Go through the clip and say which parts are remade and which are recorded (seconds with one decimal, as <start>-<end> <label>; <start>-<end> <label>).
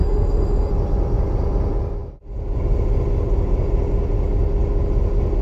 0.0-0.7 remade; 0.7-5.4 recorded